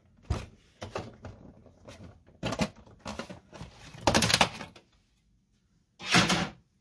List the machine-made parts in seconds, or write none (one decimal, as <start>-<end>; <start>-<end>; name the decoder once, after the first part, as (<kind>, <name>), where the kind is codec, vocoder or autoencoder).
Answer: none